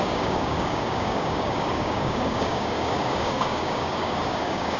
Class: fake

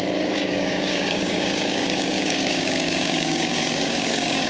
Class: fake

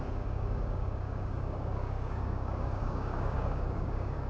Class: fake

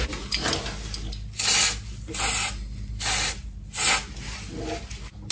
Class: real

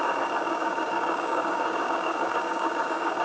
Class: fake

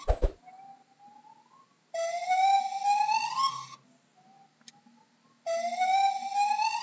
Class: real